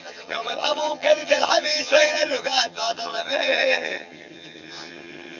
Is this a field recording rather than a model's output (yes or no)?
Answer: no